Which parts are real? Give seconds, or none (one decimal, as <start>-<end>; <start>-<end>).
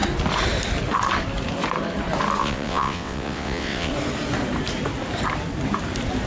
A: 0.0-2.4; 3.9-6.3